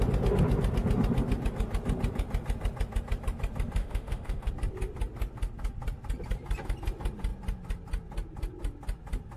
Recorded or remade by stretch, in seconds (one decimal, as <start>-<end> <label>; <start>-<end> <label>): 0.0-3.8 recorded; 3.8-4.5 remade; 4.5-9.4 recorded